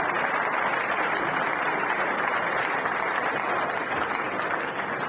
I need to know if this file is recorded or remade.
recorded